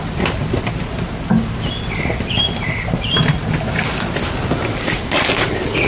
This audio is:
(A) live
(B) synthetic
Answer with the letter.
A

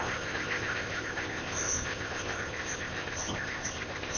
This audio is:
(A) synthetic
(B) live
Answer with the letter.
A